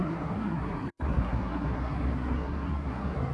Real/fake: fake